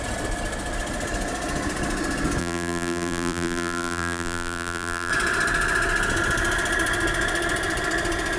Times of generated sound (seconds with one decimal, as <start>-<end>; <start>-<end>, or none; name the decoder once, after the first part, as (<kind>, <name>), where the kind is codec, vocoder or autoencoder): 2.4-5.1 (vocoder, BigVGAN v2)